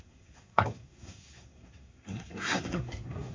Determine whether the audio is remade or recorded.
remade